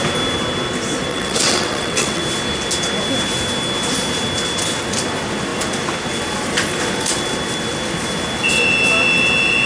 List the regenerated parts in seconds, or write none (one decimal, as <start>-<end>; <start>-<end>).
1.1-2.2